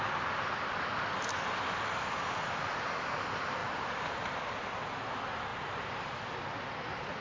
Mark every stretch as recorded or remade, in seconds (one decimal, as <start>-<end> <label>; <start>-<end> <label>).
0.0-3.6 recorded; 3.6-4.7 remade; 4.7-5.5 recorded; 5.5-6.3 remade; 6.3-7.2 recorded